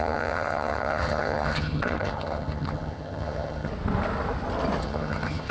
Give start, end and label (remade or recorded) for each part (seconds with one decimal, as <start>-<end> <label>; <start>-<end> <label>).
0.0-3.7 remade; 3.7-4.8 recorded; 4.8-5.5 remade